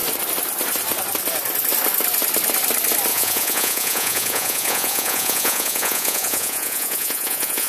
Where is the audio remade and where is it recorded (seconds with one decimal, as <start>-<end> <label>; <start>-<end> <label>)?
0.0-3.1 recorded; 3.1-7.7 remade